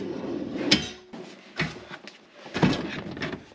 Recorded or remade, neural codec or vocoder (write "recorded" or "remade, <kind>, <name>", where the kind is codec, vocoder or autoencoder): recorded